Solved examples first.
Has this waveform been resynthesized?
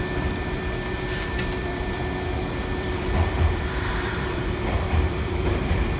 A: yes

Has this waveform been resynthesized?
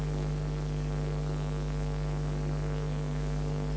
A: yes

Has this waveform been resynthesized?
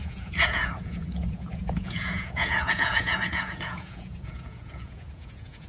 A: yes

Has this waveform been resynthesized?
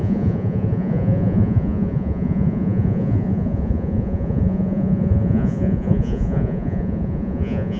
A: yes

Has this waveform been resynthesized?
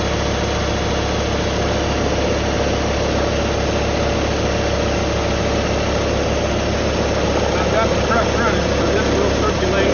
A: no